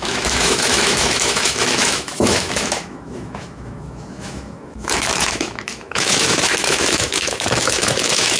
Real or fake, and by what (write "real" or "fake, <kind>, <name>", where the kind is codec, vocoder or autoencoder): fake, autoencoder, DAC-VAE